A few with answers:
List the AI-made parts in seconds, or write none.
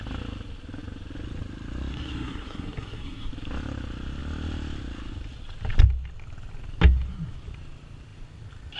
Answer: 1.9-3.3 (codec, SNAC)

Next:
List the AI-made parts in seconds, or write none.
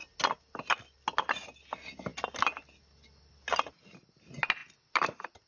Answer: none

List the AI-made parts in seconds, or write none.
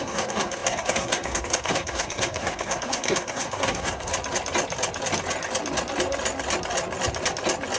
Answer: 0.0-4.1 (codec, SNAC)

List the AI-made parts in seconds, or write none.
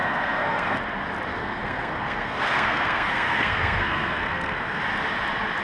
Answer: 0.0-0.8 (codec, SNAC); 1.4-4.8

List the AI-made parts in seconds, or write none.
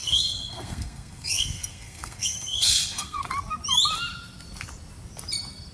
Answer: 0.0-3.2 (codec, SNAC)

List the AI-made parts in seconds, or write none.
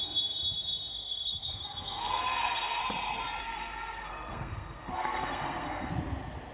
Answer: 0.9-2.8 (codec, SNAC); 3.4-5.9